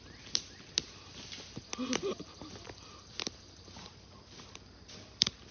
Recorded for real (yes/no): yes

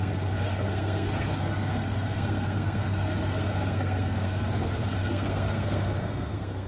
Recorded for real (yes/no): no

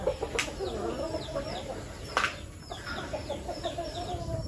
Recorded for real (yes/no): yes